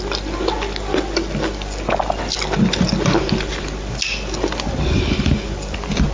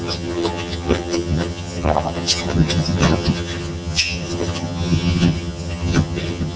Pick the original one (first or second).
first